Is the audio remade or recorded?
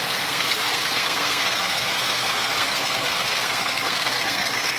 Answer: remade